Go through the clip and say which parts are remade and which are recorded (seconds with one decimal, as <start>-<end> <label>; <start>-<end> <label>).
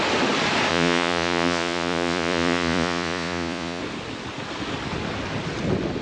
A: 0.0-0.7 recorded; 0.7-3.8 remade; 3.8-6.0 recorded